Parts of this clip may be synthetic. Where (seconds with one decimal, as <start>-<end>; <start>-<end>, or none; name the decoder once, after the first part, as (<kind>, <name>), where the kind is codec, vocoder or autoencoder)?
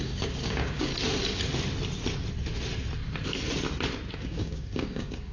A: 0.0-0.9 (codec, DAC); 4.1-5.3